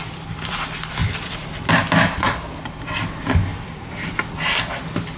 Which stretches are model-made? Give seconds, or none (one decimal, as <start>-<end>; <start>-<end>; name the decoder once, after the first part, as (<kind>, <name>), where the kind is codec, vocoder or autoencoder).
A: 1.0-1.7 (vocoder, BigVGAN v2); 3.5-4.6